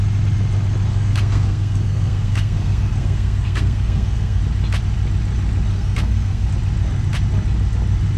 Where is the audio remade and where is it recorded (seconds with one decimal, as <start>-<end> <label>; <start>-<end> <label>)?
0.0-0.9 recorded; 0.9-4.4 remade; 4.4-5.7 recorded; 5.7-6.5 remade; 6.5-8.2 recorded